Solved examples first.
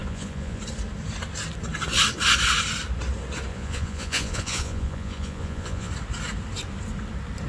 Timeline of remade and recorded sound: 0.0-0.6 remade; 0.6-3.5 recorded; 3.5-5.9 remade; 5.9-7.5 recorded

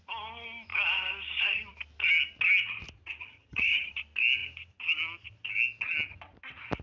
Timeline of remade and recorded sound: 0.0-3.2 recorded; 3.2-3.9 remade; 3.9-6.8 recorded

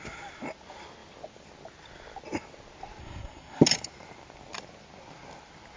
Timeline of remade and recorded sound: 0.0-3.0 recorded; 3.0-3.6 remade; 3.6-5.8 recorded